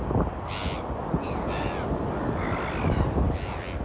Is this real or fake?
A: real